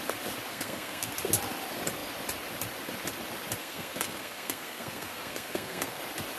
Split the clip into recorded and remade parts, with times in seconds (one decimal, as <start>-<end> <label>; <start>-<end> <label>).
0.0-0.5 recorded; 0.5-1.1 remade; 1.1-3.6 recorded; 3.6-6.0 remade; 6.0-6.4 recorded